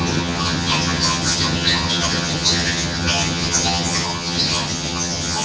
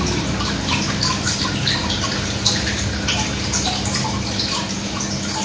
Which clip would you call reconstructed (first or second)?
first